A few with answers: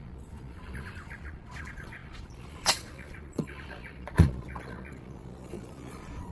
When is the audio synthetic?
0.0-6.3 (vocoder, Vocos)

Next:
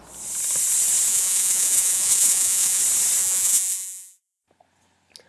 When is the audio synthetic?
1.1-2.8 (vocoder, Vocos); 3.2-4.4

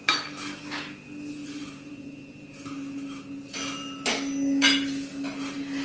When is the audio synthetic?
none